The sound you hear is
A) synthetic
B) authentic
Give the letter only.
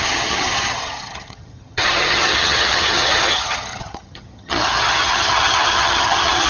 A